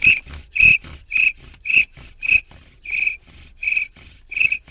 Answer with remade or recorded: recorded